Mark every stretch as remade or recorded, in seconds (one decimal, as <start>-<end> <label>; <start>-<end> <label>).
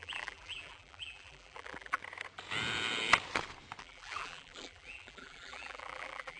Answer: 0.0-2.0 remade; 2.0-3.8 recorded; 3.8-6.4 remade